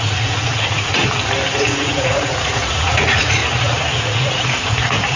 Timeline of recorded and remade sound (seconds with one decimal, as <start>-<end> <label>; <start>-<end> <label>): 0.0-1.0 remade; 1.0-1.6 recorded; 1.6-3.4 remade; 3.4-4.0 recorded; 4.0-5.2 remade